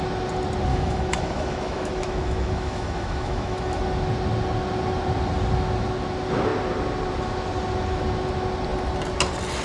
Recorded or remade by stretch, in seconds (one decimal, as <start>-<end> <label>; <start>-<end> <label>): 0.0-0.7 recorded; 0.7-3.8 remade; 3.8-9.6 recorded